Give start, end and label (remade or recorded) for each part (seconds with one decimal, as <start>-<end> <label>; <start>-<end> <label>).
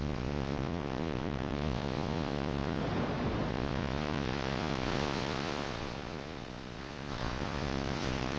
0.0-2.8 remade; 2.8-3.5 recorded; 3.5-8.4 remade